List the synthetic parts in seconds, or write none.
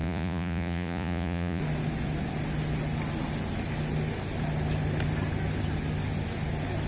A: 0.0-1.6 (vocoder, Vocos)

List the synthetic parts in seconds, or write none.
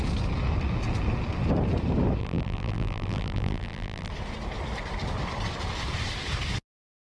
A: 2.2-4.1 (vocoder, BigVGAN v2)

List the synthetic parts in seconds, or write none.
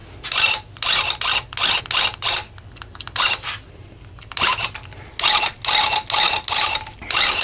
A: none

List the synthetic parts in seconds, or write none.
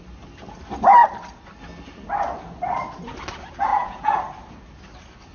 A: 3.7-4.2 (vocoder, Vocos)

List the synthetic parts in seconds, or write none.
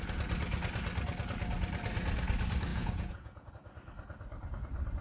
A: 2.7-3.5 (vocoder, Vocos)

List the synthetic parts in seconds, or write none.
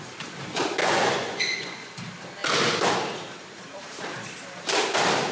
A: 0.8-1.9 (vocoder, Vocos)